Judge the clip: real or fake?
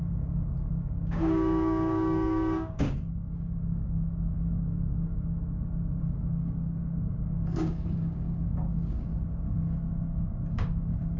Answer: fake